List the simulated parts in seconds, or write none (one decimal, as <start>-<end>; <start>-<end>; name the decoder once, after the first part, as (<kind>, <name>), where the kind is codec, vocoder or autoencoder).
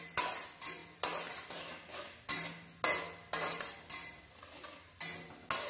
none